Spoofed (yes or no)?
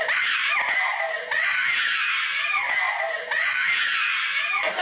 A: yes